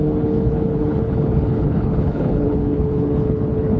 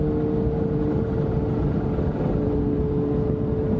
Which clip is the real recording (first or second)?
second